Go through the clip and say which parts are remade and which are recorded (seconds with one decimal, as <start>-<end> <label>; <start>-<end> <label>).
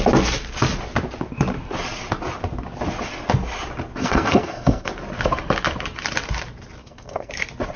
0.0-4.0 recorded; 4.0-4.9 remade; 4.9-6.8 recorded; 6.8-7.3 remade; 7.3-7.8 recorded